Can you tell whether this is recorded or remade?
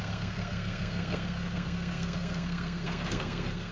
remade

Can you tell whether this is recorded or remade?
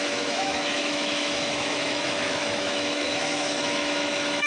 remade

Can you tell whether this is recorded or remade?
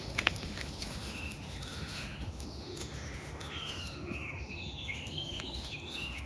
remade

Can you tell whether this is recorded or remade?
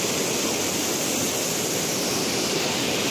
recorded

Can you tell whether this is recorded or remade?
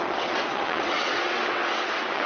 remade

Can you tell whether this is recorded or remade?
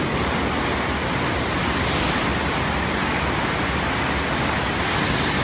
recorded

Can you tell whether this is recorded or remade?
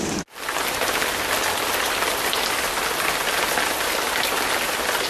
recorded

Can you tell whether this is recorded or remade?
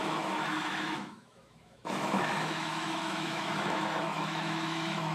remade